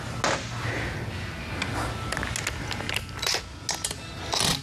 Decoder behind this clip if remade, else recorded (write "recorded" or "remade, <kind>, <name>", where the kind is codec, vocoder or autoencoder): recorded